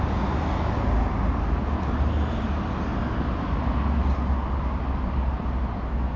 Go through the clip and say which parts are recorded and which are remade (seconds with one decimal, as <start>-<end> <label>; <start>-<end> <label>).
0.0-6.2 recorded